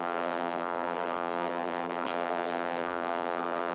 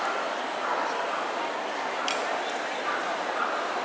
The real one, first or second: second